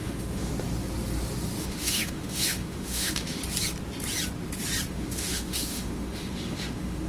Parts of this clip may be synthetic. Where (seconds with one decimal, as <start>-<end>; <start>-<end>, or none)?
0.0-0.5; 1.6-3.4; 4.9-7.1